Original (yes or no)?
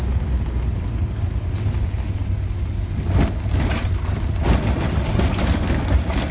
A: yes